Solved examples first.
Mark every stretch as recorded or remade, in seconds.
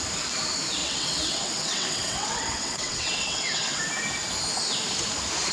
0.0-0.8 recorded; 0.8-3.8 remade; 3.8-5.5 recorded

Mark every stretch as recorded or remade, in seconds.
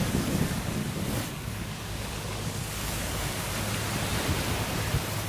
0.0-0.8 remade; 0.8-1.3 recorded; 1.3-3.5 remade; 3.5-5.3 recorded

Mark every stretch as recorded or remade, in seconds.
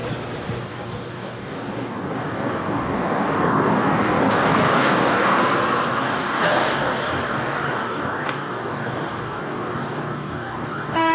0.0-0.6 recorded; 0.6-5.4 remade; 5.4-6.0 recorded; 6.0-11.1 remade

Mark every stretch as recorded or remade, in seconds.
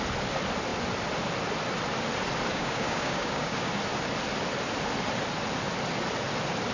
0.0-2.5 recorded; 2.5-3.7 remade; 3.7-6.7 recorded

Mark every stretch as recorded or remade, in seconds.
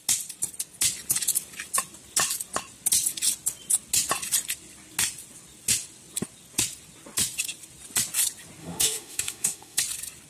0.0-8.6 recorded; 8.6-9.8 remade; 9.8-10.3 recorded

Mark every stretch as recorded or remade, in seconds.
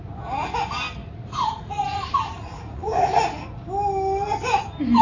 0.0-1.0 recorded; 1.0-3.1 remade; 3.1-5.0 recorded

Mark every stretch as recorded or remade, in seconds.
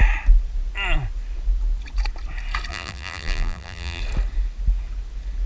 0.0-2.7 recorded; 2.7-4.0 remade; 4.0-5.5 recorded